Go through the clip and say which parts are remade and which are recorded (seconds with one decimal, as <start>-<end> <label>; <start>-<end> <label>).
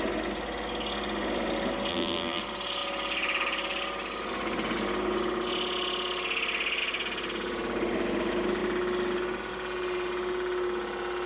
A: 0.0-1.9 recorded; 1.9-2.4 remade; 2.4-11.3 recorded